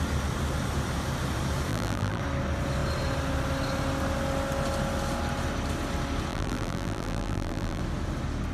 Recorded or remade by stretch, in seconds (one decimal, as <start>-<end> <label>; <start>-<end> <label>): 0.0-1.7 recorded; 1.7-2.2 remade; 2.2-6.3 recorded; 6.3-7.8 remade; 7.8-8.5 recorded

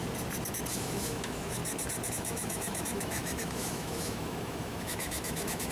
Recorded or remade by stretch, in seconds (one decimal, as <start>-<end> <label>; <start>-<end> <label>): 0.0-0.7 recorded; 0.7-1.6 remade; 1.6-2.1 recorded; 2.1-5.7 remade

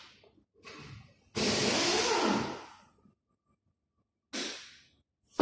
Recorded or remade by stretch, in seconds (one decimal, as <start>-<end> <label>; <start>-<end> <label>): 0.0-5.4 recorded

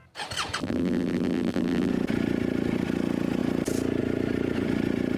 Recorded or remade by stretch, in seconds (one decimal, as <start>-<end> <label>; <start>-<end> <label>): 0.0-0.6 recorded; 0.6-1.9 remade; 1.9-5.2 recorded